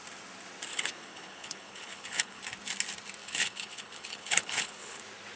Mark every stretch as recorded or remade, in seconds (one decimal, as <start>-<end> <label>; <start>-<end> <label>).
0.0-0.7 recorded; 0.7-2.4 remade; 2.4-3.2 recorded; 3.2-5.0 remade; 5.0-5.4 recorded